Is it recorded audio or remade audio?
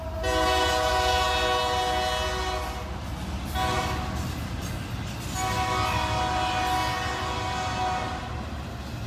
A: recorded